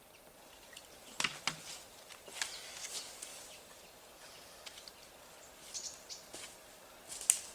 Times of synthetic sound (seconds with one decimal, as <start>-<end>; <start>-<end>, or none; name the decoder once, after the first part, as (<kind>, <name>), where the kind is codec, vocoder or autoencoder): none